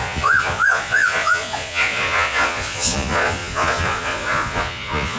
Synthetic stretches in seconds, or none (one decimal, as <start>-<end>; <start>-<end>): 0.0-5.2